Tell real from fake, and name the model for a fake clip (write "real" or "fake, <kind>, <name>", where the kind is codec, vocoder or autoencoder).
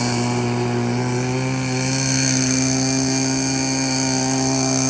real